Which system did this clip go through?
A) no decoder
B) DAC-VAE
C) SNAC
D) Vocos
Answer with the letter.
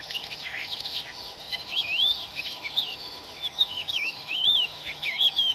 B